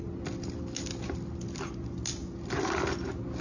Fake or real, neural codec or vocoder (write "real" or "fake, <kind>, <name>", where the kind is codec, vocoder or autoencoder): real